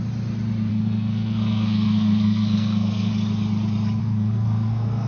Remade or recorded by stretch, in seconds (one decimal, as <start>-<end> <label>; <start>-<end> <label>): 0.0-0.7 recorded; 0.7-3.1 remade; 3.1-4.0 recorded; 4.0-5.1 remade